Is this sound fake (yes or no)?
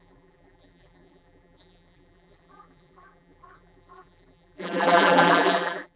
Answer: yes